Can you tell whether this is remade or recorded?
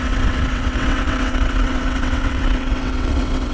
remade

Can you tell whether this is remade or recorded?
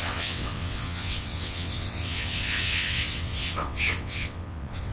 remade